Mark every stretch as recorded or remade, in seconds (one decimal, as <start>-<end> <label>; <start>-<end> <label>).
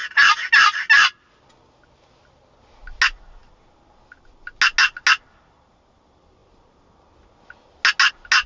0.0-8.5 recorded